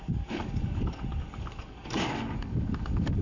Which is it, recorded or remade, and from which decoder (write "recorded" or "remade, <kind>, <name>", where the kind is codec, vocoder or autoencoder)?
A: remade, codec, DAC